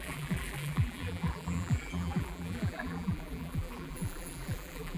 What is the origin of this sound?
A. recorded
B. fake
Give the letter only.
B